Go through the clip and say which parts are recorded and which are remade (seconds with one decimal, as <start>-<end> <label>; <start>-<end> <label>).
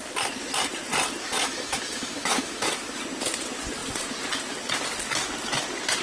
0.0-1.2 recorded; 1.2-3.0 remade; 3.0-6.0 recorded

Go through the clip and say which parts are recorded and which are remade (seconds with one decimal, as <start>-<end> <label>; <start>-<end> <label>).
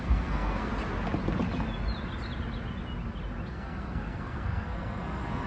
0.0-0.7 remade; 0.7-3.5 recorded; 3.5-5.5 remade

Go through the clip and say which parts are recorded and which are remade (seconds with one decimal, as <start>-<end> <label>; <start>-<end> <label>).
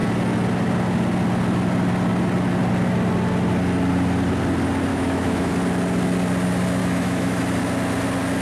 0.0-4.9 recorded; 4.9-5.5 remade; 5.5-6.8 recorded; 6.8-7.4 remade; 7.4-8.4 recorded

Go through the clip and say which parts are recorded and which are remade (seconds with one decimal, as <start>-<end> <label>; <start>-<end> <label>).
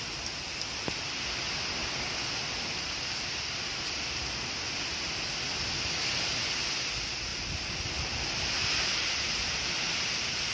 0.0-10.5 recorded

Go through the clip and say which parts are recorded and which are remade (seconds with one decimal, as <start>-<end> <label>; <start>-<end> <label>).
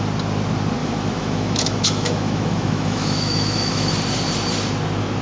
0.0-0.8 recorded; 0.8-3.9 remade; 3.9-5.2 recorded